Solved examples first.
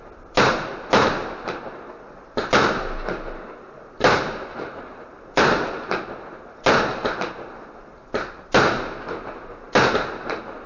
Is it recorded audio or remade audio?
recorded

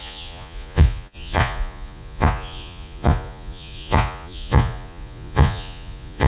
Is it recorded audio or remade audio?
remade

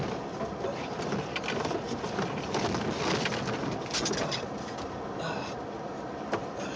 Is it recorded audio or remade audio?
recorded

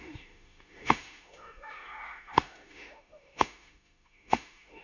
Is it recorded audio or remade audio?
remade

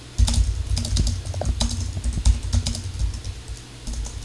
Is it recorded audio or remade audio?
recorded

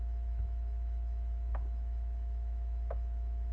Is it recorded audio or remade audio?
remade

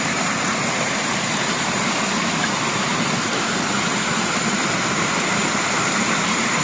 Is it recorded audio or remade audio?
remade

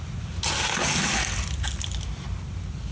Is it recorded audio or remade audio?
recorded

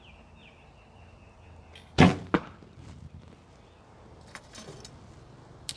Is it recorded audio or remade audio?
recorded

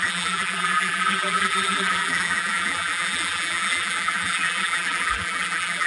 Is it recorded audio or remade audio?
remade